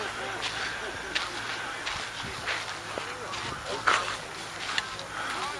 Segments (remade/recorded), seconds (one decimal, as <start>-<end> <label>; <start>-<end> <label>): 0.0-5.6 recorded